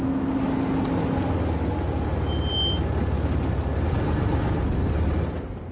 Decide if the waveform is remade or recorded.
recorded